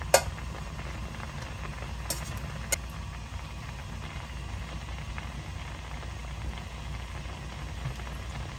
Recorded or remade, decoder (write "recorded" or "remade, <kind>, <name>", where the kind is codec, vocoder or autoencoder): recorded